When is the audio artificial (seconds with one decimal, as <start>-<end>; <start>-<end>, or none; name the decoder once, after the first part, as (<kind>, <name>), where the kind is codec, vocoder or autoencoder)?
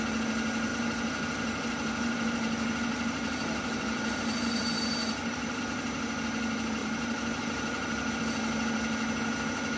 0.7-5.6 (vocoder, BigVGAN v2); 6.8-8.2